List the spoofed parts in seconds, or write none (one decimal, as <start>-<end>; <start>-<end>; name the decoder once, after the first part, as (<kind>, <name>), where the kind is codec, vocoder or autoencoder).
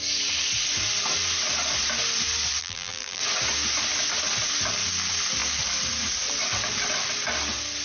2.6-3.2 (vocoder, BigVGAN v2)